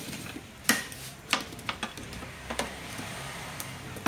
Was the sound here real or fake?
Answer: fake